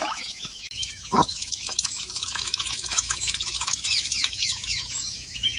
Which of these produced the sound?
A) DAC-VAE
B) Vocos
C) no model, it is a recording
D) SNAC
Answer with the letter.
A